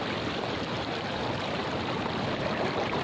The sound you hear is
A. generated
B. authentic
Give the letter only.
B